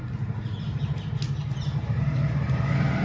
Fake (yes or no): no